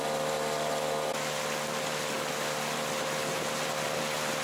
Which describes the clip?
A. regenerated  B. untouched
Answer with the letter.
B